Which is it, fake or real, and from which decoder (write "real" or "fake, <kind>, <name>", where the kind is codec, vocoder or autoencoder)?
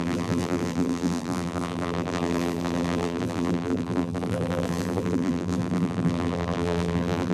fake, vocoder, BigVGAN v2